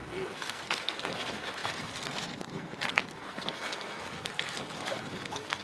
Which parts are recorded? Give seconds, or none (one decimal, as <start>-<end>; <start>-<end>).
none